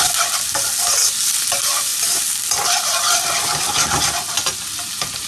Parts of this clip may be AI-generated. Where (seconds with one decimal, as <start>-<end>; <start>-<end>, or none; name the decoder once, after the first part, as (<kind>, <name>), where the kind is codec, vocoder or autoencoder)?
none